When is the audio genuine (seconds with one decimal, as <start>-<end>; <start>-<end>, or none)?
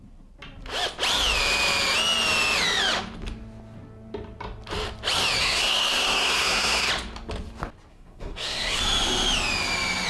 0.0-5.4; 6.9-7.9; 8.8-10.1